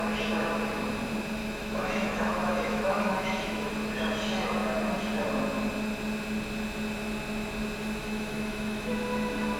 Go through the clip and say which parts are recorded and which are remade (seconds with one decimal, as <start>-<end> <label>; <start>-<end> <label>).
0.0-1.4 recorded; 1.4-3.7 remade; 3.7-8.0 recorded; 8.0-8.9 remade; 8.9-9.6 recorded